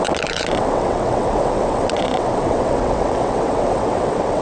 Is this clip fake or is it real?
fake